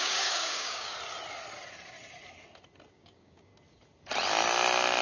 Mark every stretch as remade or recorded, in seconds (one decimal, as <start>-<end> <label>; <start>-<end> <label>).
0.0-0.9 remade; 0.9-2.9 recorded; 2.9-3.5 remade; 3.5-5.0 recorded